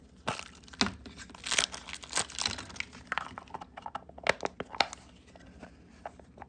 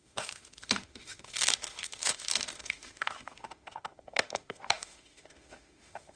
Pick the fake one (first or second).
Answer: second